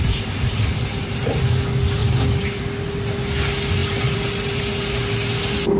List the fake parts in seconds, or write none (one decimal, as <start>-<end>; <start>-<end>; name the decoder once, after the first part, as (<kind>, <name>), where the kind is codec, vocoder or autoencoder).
2.0-2.6 (vocoder, BigVGAN v2); 3.8-5.1